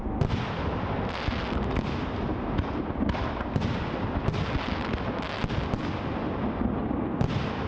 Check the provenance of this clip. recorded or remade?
recorded